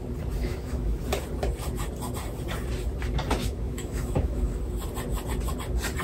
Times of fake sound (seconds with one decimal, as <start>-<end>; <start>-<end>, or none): 0.4-1.0; 3.4-4.6